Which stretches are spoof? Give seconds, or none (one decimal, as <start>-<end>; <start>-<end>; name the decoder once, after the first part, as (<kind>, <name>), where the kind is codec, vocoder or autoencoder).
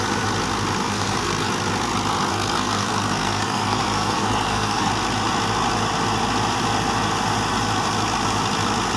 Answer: 0.8-1.5 (codec, SNAC); 2.3-4.9